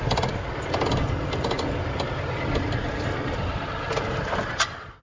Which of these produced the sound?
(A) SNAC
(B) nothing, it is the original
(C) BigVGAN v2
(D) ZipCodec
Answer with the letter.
B